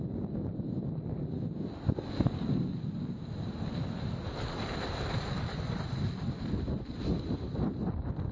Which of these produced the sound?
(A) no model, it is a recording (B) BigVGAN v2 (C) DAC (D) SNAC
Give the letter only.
A